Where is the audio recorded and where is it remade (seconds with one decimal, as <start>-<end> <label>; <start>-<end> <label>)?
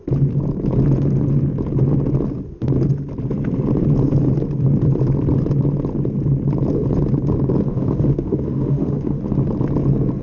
0.0-7.7 recorded; 7.7-9.2 remade; 9.2-10.2 recorded